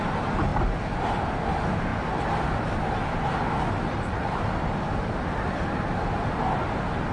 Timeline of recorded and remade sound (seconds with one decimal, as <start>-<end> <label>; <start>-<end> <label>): 0.0-7.1 recorded